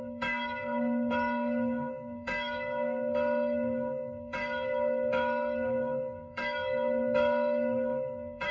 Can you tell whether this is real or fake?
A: fake